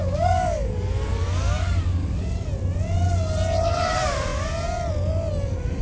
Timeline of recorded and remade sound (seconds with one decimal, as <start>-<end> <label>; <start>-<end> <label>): 0.0-2.5 remade; 2.5-5.8 recorded